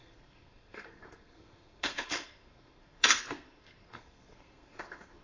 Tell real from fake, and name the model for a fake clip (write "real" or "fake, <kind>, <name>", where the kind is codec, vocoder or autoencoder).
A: fake, codec, SNAC